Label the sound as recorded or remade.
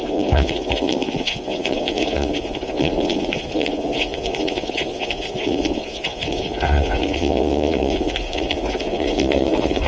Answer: remade